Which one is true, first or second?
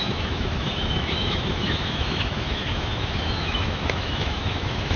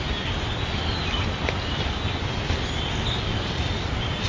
second